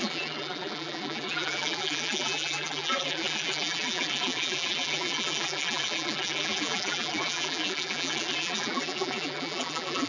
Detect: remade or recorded remade